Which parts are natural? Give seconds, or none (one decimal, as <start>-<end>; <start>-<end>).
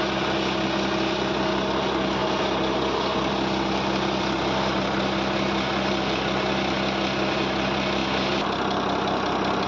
0.0-9.7